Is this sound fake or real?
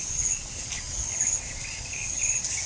real